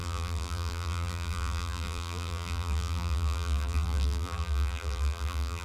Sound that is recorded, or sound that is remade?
remade